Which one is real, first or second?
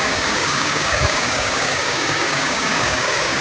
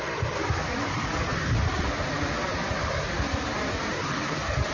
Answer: second